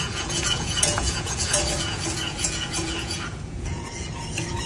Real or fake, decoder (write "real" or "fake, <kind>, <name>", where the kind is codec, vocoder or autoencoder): fake, vocoder, Vocos